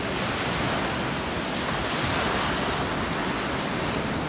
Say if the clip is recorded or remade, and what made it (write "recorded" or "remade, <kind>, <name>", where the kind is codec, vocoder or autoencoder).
recorded